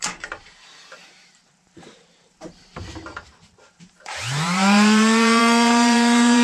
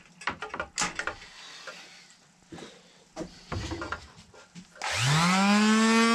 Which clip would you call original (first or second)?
second